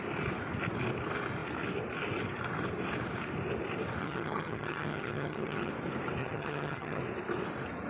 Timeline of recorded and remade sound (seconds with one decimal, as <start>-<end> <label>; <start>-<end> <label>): 0.0-4.0 recorded; 4.0-5.7 remade; 5.7-6.2 recorded; 6.2-7.0 remade; 7.0-7.9 recorded